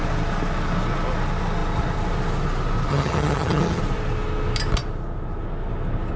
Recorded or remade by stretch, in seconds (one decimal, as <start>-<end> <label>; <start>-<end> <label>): 0.0-2.9 recorded; 2.9-3.8 remade; 3.8-6.2 recorded